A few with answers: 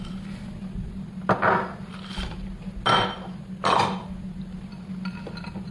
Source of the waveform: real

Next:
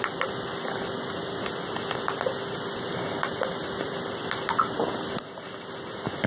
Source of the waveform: real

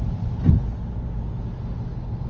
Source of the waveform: real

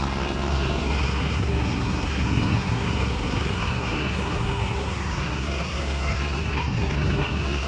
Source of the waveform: fake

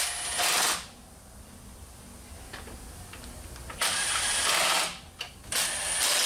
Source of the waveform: real